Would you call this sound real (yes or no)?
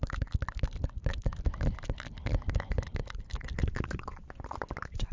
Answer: yes